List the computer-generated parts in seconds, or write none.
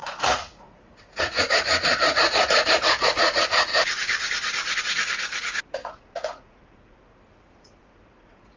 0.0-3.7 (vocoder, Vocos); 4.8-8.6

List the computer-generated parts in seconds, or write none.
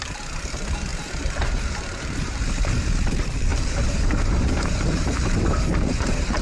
0.0-6.4 (vocoder, BigVGAN v2)